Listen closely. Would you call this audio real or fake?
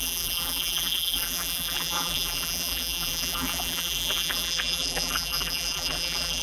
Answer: fake